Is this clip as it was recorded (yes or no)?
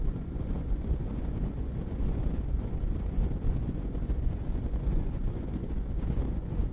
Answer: no